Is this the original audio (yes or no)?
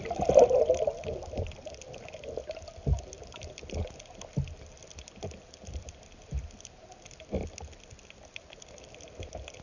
yes